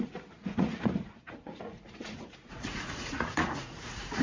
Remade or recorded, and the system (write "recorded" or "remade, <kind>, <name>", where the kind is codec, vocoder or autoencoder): remade, vocoder, Vocos